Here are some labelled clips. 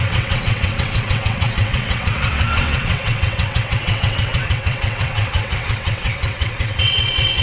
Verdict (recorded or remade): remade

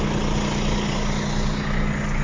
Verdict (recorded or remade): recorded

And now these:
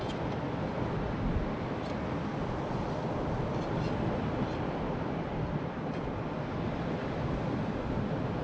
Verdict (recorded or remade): recorded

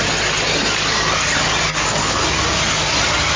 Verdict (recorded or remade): recorded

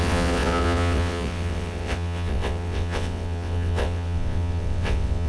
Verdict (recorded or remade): remade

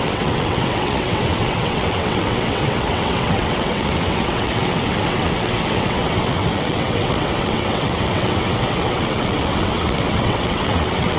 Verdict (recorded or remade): remade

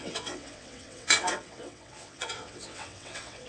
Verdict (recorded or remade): remade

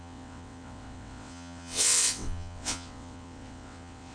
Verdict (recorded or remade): remade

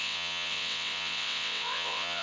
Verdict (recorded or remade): remade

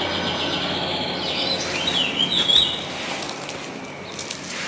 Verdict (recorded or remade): recorded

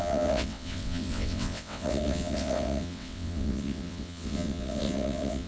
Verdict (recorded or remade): remade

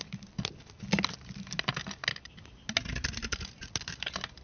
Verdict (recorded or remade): recorded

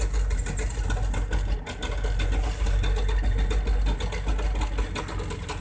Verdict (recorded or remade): recorded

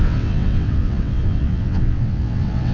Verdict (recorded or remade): remade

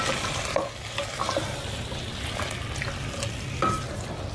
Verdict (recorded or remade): recorded